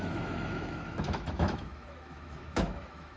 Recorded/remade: remade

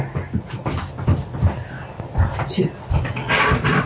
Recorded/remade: recorded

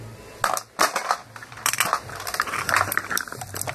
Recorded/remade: recorded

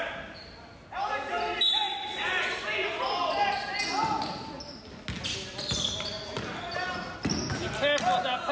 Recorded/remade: recorded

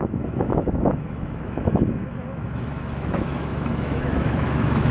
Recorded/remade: remade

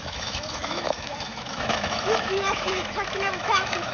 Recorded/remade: remade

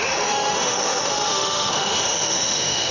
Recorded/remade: remade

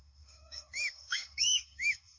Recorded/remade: remade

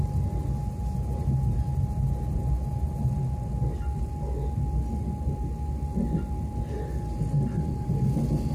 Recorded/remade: recorded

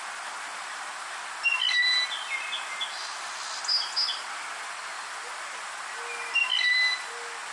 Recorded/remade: recorded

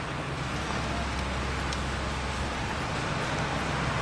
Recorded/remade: recorded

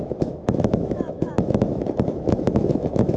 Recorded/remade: remade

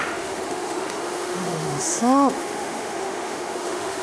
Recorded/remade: remade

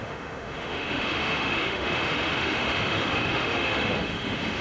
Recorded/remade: remade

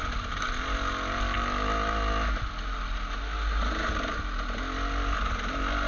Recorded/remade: recorded